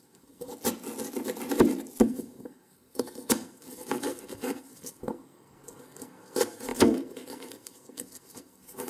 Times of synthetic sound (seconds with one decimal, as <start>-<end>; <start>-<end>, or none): 0.0-0.5; 2.0-8.9